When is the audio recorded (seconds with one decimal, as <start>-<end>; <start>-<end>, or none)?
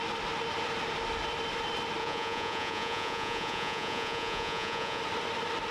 0.0-2.0; 5.0-5.7